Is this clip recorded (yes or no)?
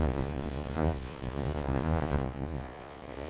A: no